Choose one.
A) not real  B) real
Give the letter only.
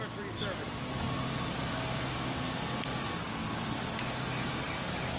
B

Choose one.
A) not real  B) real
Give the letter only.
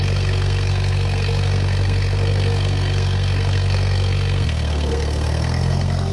A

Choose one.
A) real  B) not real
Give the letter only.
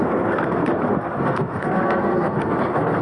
B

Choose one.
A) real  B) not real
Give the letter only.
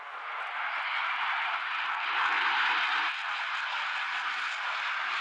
A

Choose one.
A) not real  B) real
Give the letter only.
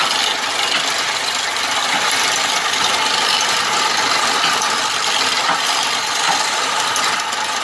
B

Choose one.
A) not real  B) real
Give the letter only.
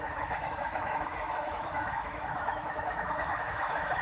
A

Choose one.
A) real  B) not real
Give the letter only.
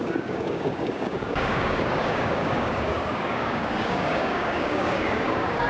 B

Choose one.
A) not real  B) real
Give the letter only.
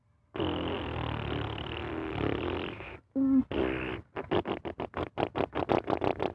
B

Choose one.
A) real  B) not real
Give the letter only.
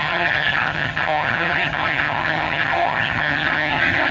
B